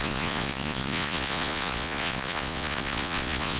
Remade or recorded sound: remade